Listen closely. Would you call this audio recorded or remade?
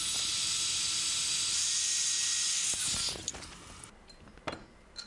recorded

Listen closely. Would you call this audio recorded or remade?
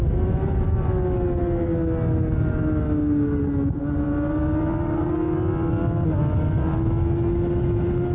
recorded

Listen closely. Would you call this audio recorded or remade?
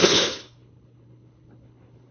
remade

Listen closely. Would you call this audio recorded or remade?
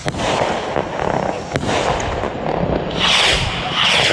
recorded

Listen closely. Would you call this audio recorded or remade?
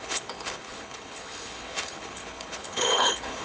remade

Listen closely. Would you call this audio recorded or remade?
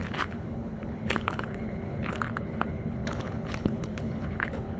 remade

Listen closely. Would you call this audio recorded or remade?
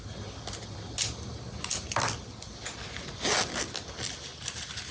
recorded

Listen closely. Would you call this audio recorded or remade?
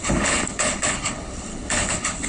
remade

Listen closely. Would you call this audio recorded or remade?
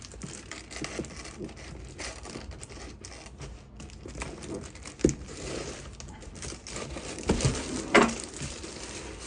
recorded